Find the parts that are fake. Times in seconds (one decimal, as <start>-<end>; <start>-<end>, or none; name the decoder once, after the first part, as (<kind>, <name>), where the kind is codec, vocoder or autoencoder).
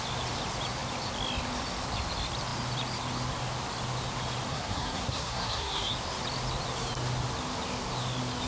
4.5-5.9 (codec, SNAC)